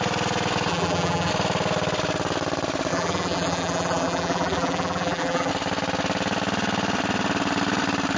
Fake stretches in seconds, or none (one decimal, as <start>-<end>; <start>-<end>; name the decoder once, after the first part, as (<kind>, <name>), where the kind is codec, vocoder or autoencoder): 0.7-1.3 (vocoder, BigVGAN v2); 2.9-5.5